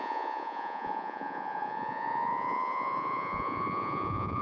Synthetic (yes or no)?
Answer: yes